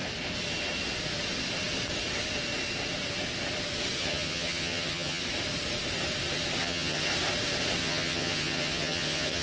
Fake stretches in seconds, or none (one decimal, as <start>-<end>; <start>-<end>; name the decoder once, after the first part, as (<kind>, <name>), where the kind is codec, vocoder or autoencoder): 4.0-5.2 (vocoder, HiFi-GAN); 6.6-7.1; 7.8-9.4